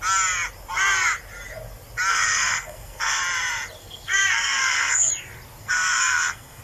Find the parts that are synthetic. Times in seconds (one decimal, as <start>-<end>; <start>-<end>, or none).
2.1-3.2; 3.8-5.1; 5.6-6.6